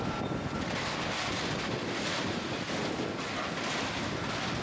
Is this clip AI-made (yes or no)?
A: no